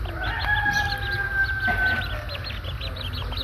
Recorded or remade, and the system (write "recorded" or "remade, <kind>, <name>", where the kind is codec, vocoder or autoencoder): recorded